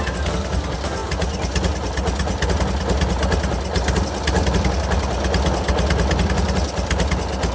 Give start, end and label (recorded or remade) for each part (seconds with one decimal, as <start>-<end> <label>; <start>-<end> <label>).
0.0-7.5 recorded